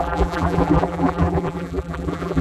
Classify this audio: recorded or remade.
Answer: remade